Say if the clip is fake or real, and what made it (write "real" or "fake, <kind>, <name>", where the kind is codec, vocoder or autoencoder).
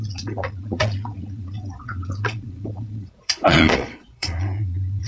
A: fake, vocoder, Vocos